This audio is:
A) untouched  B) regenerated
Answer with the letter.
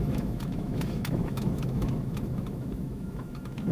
B